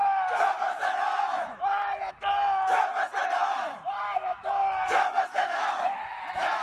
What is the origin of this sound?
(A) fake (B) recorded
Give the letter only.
A